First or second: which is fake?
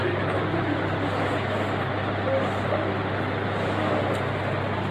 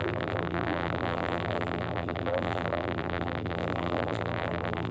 second